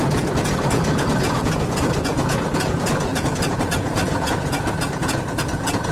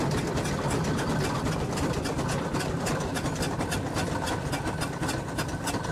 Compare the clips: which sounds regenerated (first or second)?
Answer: first